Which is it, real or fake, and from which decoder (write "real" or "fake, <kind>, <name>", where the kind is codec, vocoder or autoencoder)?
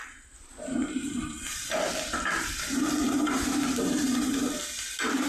fake, vocoder, BigVGAN v2